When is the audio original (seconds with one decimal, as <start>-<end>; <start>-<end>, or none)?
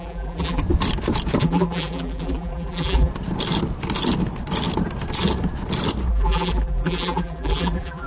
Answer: 0.6-1.4; 3.1-6.1